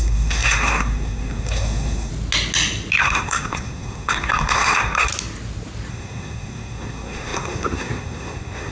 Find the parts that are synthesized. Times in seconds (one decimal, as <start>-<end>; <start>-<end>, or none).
0.0-2.1; 3.0-5.1; 5.9-8.7